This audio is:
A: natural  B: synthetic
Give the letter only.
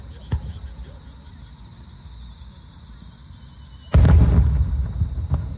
A